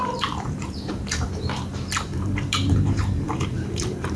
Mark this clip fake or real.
fake